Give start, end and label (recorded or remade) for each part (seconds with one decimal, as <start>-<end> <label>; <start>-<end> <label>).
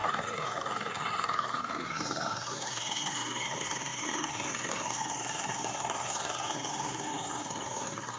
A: 0.0-8.2 remade